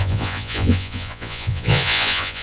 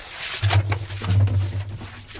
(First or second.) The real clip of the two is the second